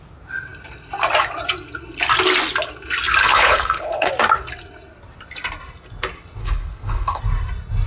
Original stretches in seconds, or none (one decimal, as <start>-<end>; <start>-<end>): 0.0-3.2; 4.1-6.4; 7.2-7.9